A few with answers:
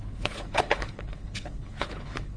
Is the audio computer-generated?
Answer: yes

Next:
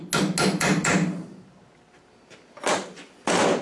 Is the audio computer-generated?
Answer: no